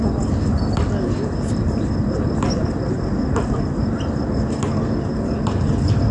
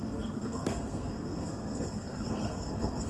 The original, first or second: first